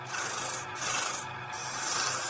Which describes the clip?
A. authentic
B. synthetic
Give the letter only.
A